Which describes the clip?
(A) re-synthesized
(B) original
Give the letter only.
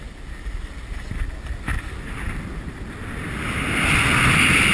B